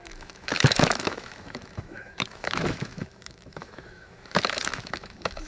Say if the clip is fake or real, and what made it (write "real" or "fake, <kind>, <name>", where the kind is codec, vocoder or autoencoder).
fake, autoencoder, DAC-VAE